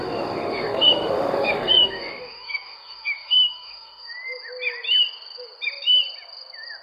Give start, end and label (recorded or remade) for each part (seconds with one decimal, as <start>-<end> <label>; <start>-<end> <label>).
0.0-4.1 remade; 4.1-6.8 recorded